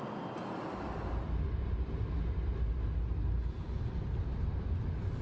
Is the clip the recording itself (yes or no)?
yes